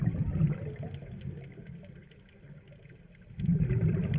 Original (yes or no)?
yes